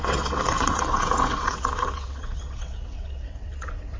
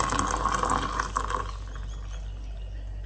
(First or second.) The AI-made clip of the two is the first